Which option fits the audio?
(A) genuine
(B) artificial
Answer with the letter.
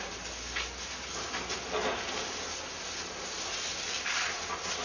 A